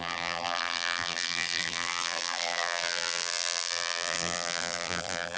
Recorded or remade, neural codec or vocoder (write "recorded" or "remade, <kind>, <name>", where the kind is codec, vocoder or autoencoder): remade, vocoder, BigVGAN v2